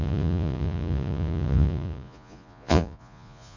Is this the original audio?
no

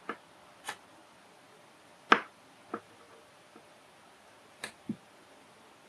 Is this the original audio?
yes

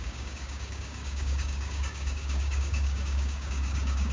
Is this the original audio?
no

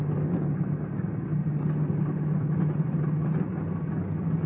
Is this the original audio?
yes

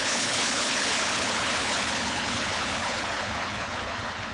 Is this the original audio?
no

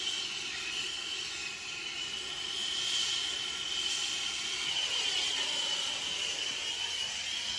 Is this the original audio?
yes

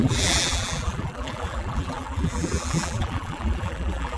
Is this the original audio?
no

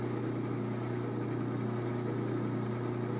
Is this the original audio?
yes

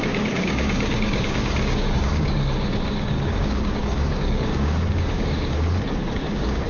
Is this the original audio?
no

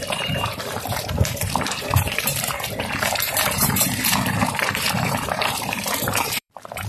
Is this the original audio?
no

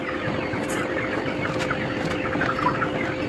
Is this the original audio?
yes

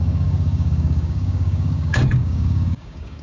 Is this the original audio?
no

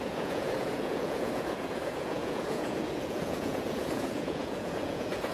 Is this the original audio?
no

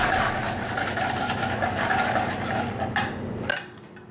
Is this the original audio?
yes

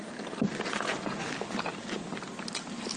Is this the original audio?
yes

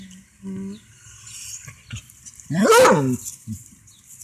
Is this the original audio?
yes